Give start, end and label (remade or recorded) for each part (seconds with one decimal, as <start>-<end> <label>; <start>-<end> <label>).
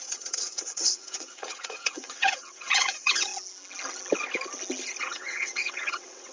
0.0-3.3 remade; 3.3-5.0 recorded; 5.0-6.3 remade